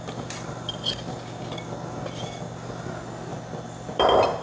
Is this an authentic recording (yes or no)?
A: yes